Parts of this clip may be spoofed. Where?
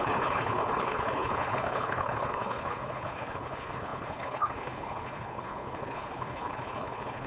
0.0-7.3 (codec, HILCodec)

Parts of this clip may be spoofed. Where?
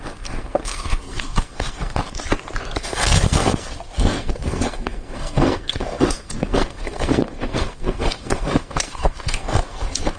0.0-2.0 (codec, SNAC); 2.8-10.2